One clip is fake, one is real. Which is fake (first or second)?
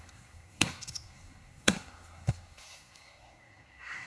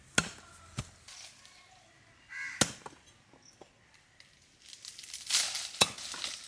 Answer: first